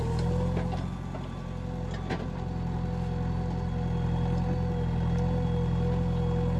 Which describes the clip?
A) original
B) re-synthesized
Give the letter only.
A